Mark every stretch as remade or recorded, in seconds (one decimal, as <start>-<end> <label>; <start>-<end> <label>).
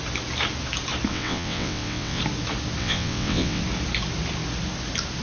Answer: 0.0-1.1 recorded; 1.1-2.2 remade; 2.2-2.8 recorded; 2.8-3.6 remade; 3.6-5.2 recorded